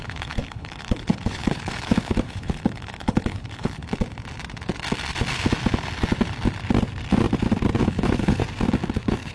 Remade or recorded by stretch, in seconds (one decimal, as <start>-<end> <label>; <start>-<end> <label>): 0.0-3.8 remade; 3.8-7.8 recorded; 7.8-8.4 remade; 8.4-8.9 recorded; 8.9-9.3 remade